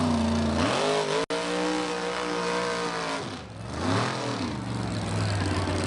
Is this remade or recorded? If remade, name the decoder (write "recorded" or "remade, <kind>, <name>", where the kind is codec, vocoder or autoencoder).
recorded